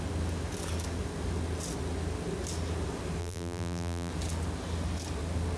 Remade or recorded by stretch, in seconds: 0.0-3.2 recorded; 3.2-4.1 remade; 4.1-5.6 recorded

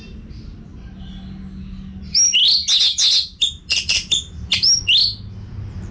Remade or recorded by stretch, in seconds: 0.0-5.9 recorded

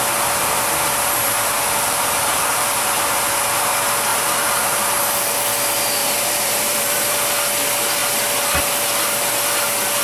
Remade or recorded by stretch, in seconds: 0.0-0.4 recorded; 0.4-3.4 remade; 3.4-4.1 recorded; 4.1-5.0 remade; 5.0-6.0 recorded; 6.0-7.3 remade; 7.3-10.0 recorded

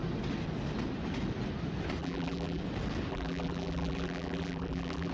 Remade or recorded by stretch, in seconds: 0.0-2.0 recorded; 2.0-2.6 remade; 2.6-3.1 recorded; 3.1-5.1 remade

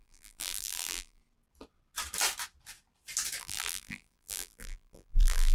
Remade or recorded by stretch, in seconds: 0.0-1.2 remade; 1.2-3.4 recorded; 3.4-5.5 remade